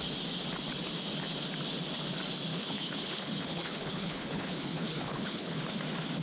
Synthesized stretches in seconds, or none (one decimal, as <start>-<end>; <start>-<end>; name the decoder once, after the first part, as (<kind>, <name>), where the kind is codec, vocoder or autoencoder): 2.5-5.6 (codec, HILCodec)